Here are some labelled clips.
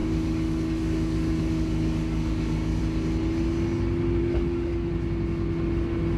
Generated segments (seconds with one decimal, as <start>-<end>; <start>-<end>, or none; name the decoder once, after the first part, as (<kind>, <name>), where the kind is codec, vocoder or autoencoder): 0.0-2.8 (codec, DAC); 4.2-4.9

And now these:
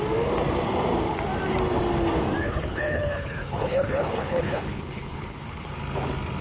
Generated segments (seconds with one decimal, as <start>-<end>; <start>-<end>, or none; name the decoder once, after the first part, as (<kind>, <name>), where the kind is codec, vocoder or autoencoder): 2.4-5.7 (codec, HILCodec)

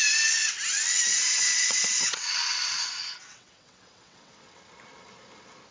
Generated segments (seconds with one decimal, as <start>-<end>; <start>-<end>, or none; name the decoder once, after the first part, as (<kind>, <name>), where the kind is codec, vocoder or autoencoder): 1.1-4.5 (vocoder, WaveNeXt)